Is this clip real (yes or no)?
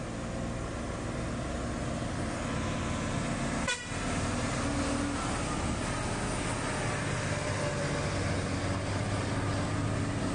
yes